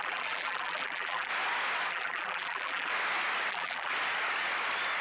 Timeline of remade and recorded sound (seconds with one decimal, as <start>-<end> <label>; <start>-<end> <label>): 0.0-1.3 remade; 1.3-1.9 recorded; 1.9-2.9 remade; 2.9-3.5 recorded; 3.5-3.9 remade; 3.9-5.0 recorded